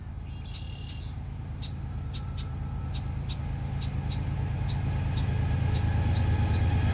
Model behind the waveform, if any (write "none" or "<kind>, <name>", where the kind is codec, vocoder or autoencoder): none